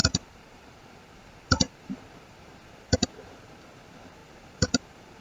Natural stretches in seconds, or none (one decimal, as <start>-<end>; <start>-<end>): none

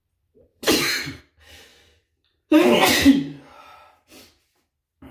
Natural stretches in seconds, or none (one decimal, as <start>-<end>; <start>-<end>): 0.0-0.5; 1.2-5.1

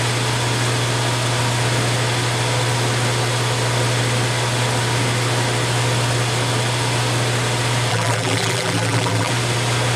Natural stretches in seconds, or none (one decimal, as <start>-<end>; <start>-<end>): 0.0-7.9; 9.3-10.0

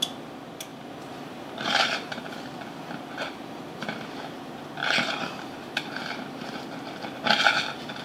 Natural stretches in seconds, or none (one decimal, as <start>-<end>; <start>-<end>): 0.0-0.7; 2.1-4.8; 6.6-8.0